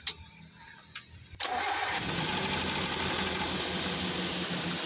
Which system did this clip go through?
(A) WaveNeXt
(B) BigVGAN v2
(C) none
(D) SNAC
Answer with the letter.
C